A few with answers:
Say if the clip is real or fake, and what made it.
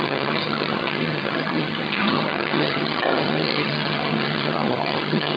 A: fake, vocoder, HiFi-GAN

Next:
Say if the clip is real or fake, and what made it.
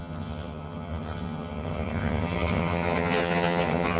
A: fake, vocoder, HiFi-GAN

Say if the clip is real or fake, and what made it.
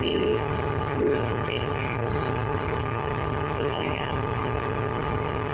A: fake, vocoder, HiFi-GAN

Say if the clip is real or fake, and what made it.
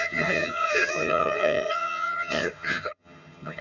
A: fake, vocoder, HiFi-GAN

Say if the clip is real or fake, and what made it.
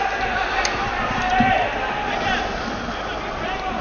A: real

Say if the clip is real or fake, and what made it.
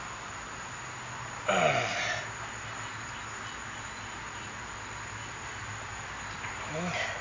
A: real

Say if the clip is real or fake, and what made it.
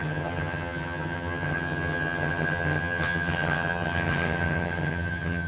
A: fake, vocoder, HiFi-GAN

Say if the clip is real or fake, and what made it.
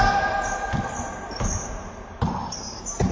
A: real